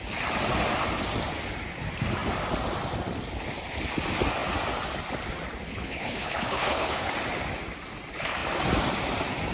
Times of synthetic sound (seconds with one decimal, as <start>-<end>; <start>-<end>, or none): 5.7-7.1